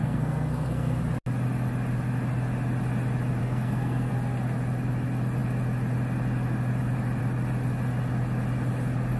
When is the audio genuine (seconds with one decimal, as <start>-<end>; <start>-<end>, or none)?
1.0-3.4; 4.1-9.2

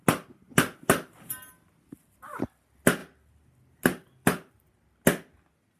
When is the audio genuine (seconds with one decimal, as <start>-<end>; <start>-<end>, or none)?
0.0-5.8

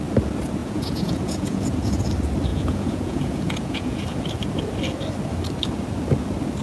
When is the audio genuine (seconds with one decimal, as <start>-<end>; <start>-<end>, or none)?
0.0-0.6; 2.0-2.5; 4.0-6.6

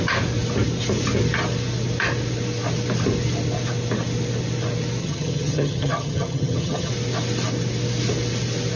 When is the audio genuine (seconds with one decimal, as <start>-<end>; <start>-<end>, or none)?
0.0-5.0; 6.9-8.8

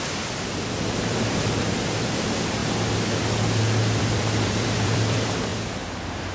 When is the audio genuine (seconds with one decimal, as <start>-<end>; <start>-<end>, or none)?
2.6-4.0; 5.5-6.3

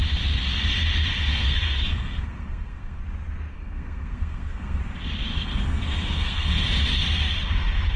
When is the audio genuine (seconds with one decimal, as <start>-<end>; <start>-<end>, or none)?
0.0-1.3; 3.0-3.5; 4.8-5.3; 6.6-8.0

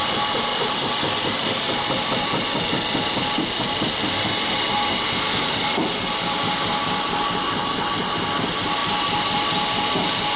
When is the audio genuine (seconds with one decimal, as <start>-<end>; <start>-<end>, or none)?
0.0-0.5; 2.7-10.4

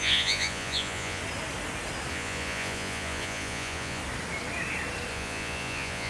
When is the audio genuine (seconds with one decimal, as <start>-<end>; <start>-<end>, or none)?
1.2-2.1; 4.0-5.1